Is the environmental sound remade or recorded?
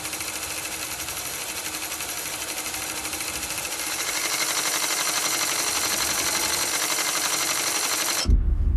recorded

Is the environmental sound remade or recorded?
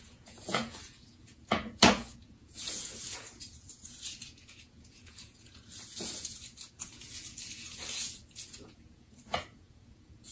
remade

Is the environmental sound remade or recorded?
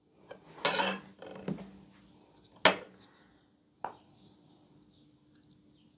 recorded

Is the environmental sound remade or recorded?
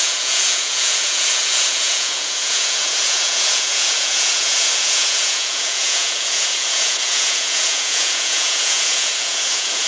remade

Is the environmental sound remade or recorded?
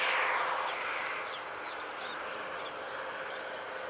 recorded